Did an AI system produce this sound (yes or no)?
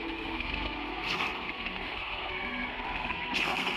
yes